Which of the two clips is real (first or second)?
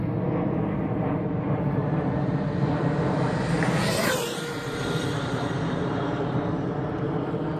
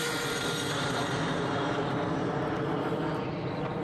second